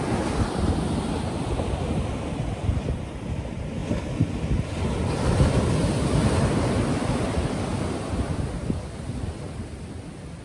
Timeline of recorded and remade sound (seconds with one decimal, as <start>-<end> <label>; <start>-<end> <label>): 0.0-10.4 recorded